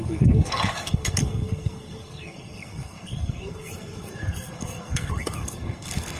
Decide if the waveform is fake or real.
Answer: fake